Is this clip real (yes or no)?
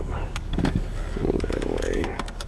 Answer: no